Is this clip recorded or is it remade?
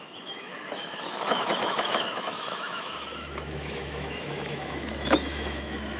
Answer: remade